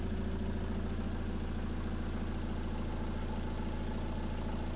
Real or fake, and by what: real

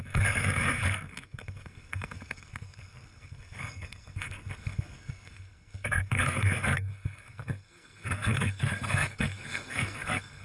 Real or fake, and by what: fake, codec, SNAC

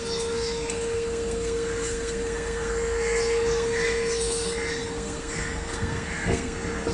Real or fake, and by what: fake, codec, SNAC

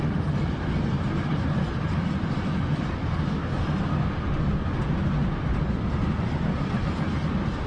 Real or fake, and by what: real